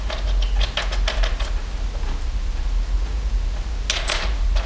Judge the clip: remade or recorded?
recorded